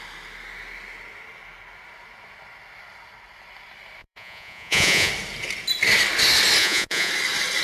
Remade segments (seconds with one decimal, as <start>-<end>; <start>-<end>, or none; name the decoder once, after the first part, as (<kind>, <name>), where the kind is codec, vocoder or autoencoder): 4.0-5.1 (vocoder, Vocos); 6.6-7.1